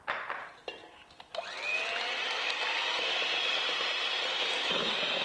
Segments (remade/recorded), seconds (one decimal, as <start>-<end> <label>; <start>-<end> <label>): 0.0-5.2 recorded